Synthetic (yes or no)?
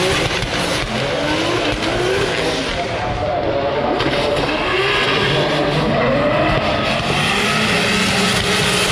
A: no